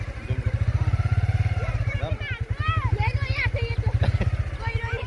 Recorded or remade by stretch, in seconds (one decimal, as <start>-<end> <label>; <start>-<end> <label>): 0.0-5.1 recorded